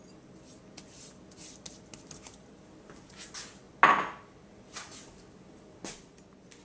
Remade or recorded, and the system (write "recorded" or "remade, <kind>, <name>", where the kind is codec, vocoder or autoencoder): recorded